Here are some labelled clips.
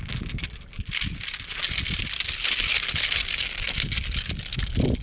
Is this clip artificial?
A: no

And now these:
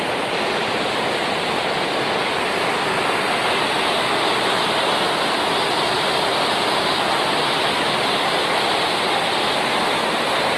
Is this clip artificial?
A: no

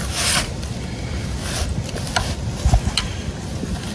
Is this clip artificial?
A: no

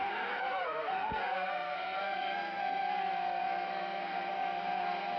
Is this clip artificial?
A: yes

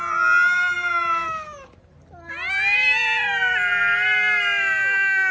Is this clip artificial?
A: no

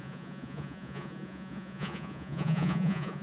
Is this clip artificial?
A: yes